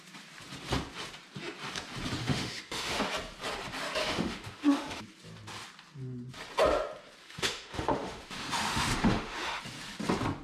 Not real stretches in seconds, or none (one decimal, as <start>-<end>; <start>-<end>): 2.2-3.0; 4.0-5.0; 7.2-9.6